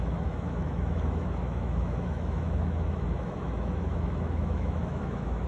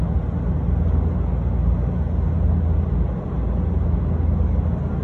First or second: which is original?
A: second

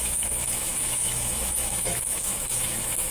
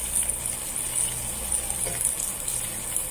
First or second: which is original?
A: second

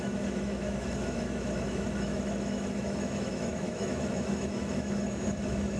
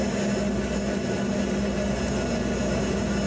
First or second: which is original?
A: second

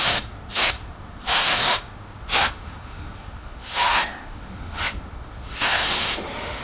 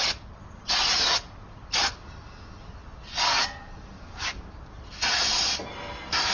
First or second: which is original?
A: second